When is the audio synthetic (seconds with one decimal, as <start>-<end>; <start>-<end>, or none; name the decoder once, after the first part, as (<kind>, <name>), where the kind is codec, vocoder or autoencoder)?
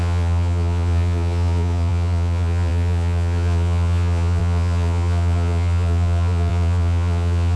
0.0-7.6 (vocoder, Vocos)